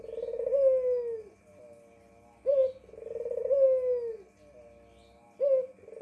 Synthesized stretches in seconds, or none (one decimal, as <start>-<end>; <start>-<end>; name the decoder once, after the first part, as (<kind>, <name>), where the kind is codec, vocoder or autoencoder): 2.5-3.5 (vocoder, BigVGAN v2)